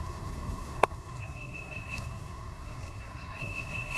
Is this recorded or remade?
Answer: remade